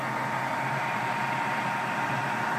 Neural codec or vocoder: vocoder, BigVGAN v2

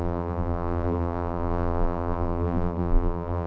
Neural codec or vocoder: vocoder, BigVGAN v2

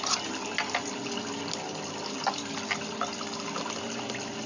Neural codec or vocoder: none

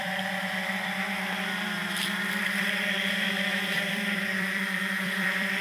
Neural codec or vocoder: vocoder, BigVGAN v2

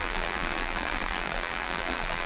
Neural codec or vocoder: vocoder, BigVGAN v2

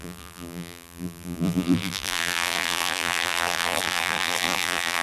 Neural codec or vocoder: vocoder, BigVGAN v2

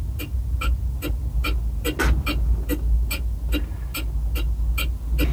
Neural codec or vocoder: none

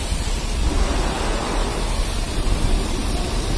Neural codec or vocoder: none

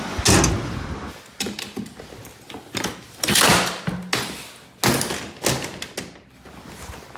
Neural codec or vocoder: none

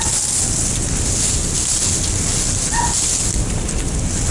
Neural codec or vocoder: none